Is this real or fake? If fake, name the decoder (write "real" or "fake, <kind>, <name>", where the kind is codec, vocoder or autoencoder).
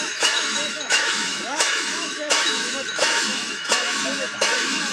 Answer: fake, autoencoder, DAC-VAE